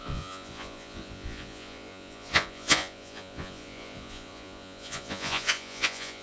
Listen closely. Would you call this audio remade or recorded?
remade